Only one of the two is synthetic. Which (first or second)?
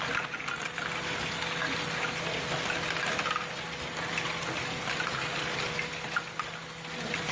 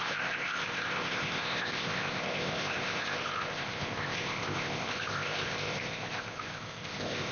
second